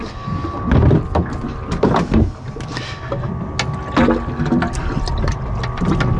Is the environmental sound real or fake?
real